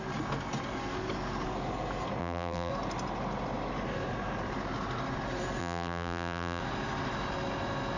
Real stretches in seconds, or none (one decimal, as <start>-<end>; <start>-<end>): 0.0-2.2; 2.7-5.6; 6.6-8.0